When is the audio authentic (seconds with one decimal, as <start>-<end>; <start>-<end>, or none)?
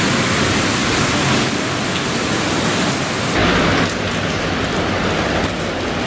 0.0-6.1